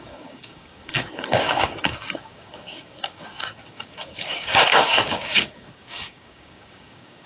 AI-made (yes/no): yes